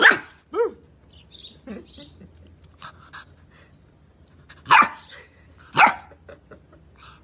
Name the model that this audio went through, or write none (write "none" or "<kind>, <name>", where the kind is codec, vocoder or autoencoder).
none